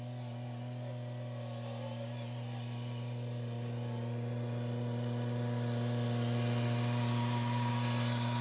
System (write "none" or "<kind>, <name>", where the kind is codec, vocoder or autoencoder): none